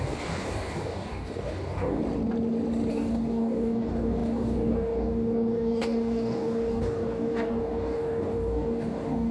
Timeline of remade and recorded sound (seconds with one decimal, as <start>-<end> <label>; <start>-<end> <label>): 0.0-2.0 remade; 2.0-2.9 recorded; 2.9-9.3 remade